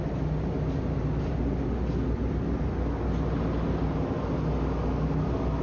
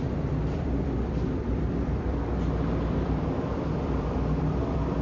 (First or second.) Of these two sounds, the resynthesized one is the second